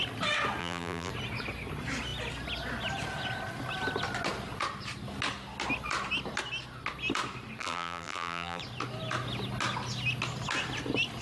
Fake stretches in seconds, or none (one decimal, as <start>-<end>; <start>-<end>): 0.6-1.1; 7.6-8.6